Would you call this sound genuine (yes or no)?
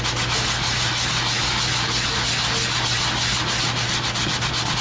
yes